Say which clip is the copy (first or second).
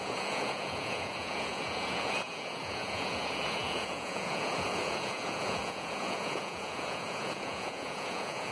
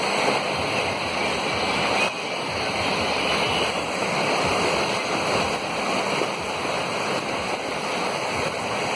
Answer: first